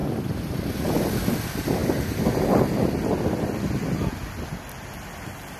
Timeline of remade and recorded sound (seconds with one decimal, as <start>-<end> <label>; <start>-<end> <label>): 0.0-5.6 recorded